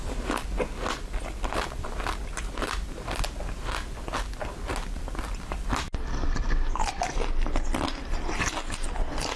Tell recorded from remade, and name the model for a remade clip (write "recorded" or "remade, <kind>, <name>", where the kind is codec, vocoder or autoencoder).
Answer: recorded